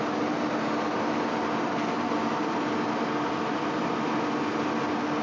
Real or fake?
real